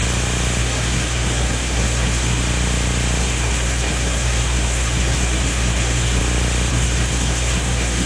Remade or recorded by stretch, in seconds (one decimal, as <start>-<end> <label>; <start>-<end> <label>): 0.0-0.6 recorded; 0.6-2.4 remade; 2.4-3.2 recorded; 3.2-6.2 remade; 6.2-6.7 recorded; 6.7-8.1 remade